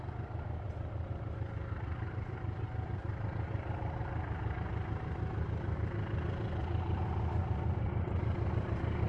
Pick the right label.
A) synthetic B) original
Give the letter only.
A